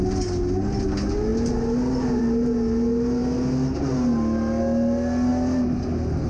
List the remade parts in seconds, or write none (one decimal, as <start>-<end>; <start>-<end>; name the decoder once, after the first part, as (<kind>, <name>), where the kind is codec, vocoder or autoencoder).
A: none